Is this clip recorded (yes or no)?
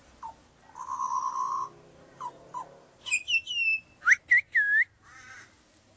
yes